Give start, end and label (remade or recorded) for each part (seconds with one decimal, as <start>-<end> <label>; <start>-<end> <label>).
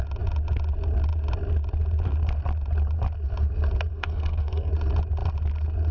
0.0-3.9 recorded; 3.9-4.7 remade; 4.7-5.9 recorded